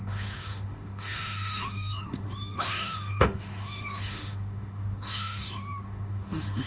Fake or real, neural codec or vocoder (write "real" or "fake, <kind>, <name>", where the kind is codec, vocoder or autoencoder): fake, autoencoder, DAC-VAE